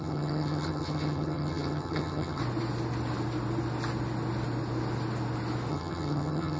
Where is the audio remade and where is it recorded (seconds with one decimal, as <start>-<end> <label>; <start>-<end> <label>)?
0.0-2.4 remade; 2.4-5.7 recorded; 5.7-6.6 remade